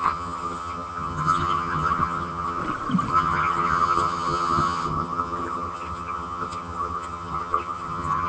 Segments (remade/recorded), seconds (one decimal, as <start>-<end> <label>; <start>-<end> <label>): 0.0-2.6 remade; 2.6-3.1 recorded; 3.1-8.3 remade